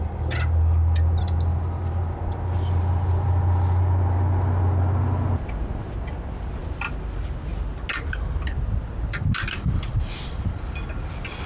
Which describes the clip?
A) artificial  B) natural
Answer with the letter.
B